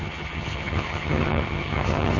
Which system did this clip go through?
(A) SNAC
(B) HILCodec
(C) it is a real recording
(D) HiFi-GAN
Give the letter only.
D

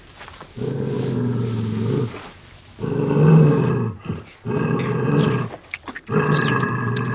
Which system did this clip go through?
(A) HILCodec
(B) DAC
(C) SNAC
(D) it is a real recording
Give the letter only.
D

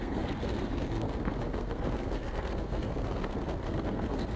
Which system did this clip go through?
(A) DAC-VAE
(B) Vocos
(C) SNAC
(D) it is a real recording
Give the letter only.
C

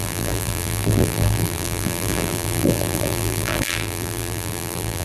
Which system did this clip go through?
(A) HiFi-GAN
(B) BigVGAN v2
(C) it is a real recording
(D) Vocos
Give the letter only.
B